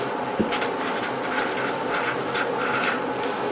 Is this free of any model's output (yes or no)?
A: yes